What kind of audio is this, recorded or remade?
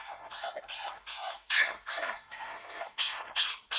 remade